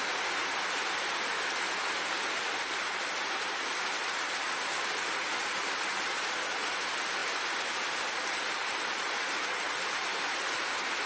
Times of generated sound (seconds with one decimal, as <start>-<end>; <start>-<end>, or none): none